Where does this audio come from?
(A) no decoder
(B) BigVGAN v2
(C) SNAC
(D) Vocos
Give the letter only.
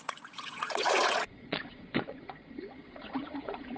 D